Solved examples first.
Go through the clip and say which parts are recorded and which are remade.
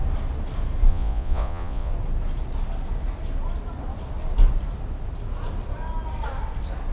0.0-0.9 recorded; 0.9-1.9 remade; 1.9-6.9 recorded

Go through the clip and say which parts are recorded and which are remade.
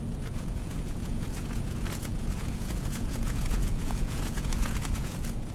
0.0-5.5 remade